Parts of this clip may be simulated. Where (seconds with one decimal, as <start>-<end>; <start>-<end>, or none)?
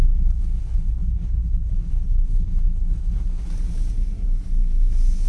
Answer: 0.0-3.5